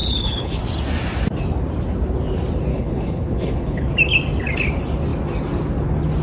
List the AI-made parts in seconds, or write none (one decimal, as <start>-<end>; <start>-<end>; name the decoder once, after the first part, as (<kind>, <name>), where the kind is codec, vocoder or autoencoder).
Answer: 0.0-0.6 (codec, HILCodec); 2.7-3.9